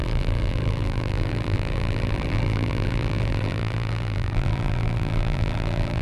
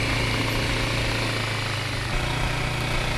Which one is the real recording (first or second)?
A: second